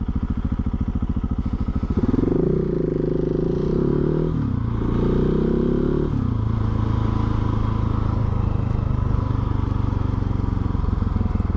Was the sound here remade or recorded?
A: recorded